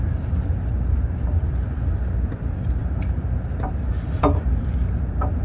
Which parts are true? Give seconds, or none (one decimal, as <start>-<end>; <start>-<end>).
2.8-3.7